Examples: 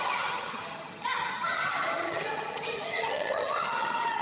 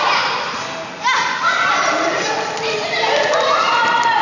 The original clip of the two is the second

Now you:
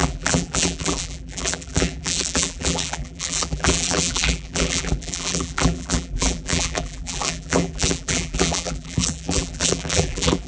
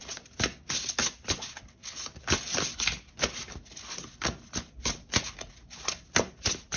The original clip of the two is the second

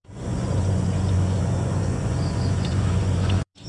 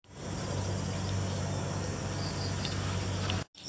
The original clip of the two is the second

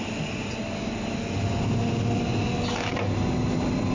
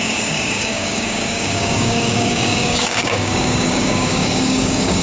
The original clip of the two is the first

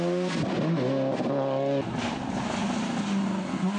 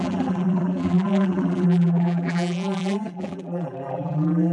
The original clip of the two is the first